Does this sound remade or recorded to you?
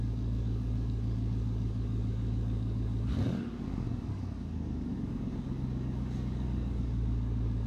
remade